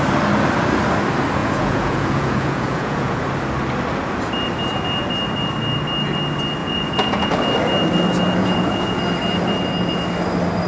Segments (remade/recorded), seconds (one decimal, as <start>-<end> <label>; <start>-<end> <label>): 0.0-1.4 recorded; 1.4-3.2 remade; 3.2-6.6 recorded; 6.6-7.3 remade; 7.3-8.4 recorded; 8.4-9.0 remade; 9.0-10.7 recorded